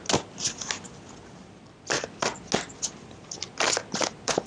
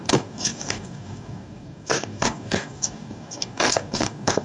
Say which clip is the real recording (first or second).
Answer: first